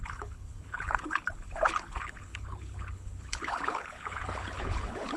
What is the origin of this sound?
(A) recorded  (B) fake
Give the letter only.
B